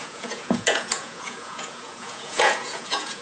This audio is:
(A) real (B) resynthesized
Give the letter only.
B